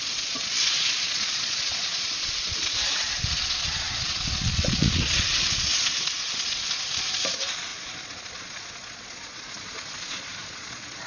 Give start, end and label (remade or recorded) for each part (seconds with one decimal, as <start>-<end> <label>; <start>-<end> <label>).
0.0-11.1 remade